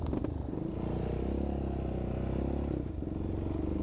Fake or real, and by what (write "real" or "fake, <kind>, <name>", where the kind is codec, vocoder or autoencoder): real